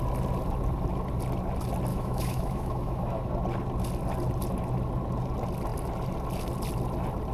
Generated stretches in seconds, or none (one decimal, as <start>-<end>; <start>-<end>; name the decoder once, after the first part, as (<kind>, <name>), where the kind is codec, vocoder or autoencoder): 1.9-3.3 (autoencoder, DAC-VAE)